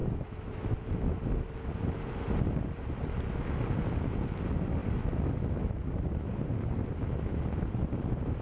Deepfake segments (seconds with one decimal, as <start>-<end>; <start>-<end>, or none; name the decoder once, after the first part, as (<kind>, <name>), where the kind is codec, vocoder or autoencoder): 0.0-0.7 (autoencoder, DAC-VAE)